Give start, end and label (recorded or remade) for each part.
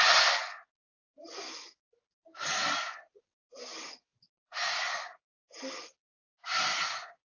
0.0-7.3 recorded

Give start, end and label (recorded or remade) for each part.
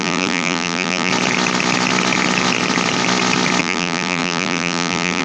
0.0-1.1 remade; 1.1-3.6 recorded; 3.6-5.2 remade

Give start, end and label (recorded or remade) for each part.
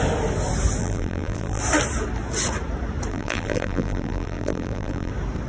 0.0-0.8 recorded; 0.8-1.6 remade; 1.6-3.1 recorded; 3.1-5.1 remade; 5.1-5.5 recorded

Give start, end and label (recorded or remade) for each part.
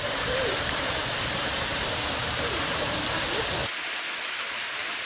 0.0-1.0 remade; 1.0-1.5 recorded; 1.5-3.6 remade; 3.6-4.4 recorded; 4.4-5.1 remade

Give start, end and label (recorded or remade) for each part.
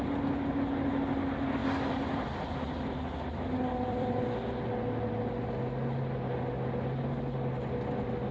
0.0-1.6 recorded; 1.6-4.2 remade; 4.2-8.3 recorded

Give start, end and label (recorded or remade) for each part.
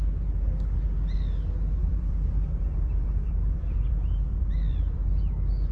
0.0-1.8 recorded; 1.8-5.2 remade; 5.2-5.7 recorded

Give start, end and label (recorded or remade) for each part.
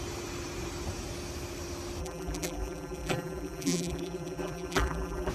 0.0-2.0 recorded; 2.0-5.3 remade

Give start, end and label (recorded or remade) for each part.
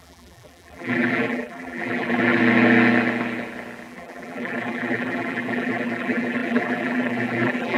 0.0-2.4 remade; 2.4-3.9 recorded; 3.9-7.8 remade